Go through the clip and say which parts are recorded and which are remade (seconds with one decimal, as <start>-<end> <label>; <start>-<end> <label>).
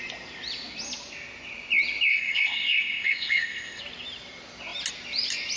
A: 0.0-2.1 recorded; 2.1-3.8 remade; 3.8-5.6 recorded